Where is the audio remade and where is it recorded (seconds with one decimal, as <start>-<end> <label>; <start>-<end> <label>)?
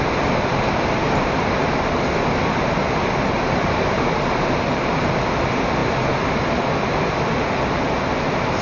0.0-8.6 recorded